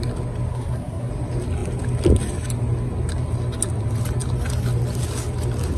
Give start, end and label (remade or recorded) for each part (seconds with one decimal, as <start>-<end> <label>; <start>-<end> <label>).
0.0-0.5 recorded; 0.5-1.1 remade; 1.1-5.8 recorded